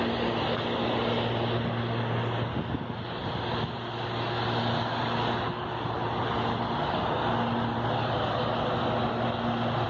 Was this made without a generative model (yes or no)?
yes